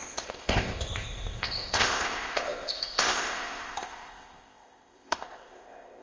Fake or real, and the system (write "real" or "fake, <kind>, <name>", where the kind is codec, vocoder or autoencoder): fake, codec, ZipCodec